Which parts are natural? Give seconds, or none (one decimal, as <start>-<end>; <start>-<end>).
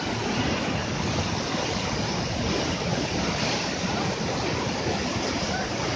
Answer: 0.0-6.0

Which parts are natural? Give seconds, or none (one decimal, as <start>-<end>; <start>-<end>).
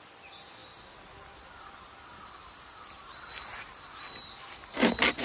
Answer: 0.0-5.2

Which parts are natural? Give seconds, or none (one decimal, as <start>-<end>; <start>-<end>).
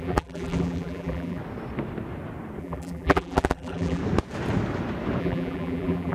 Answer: 1.4-2.6; 4.0-5.2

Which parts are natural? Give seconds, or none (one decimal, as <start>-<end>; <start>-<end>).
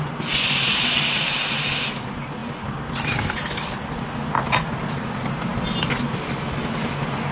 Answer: 0.0-7.3